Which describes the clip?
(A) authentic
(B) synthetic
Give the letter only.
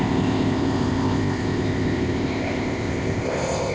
B